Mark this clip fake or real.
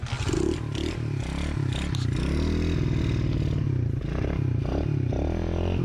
real